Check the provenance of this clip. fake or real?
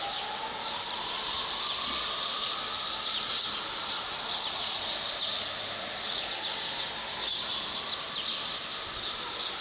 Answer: real